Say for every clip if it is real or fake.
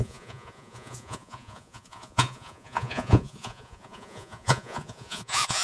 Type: fake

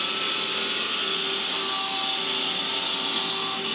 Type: real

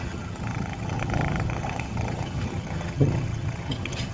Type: fake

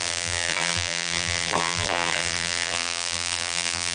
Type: fake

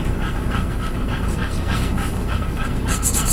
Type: fake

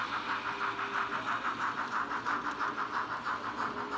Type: real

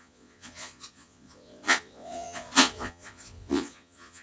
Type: fake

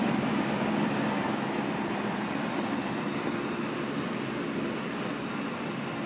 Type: fake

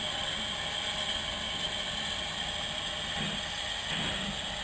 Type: real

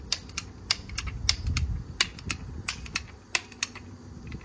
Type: real